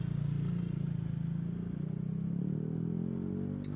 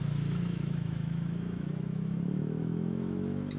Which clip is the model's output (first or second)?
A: second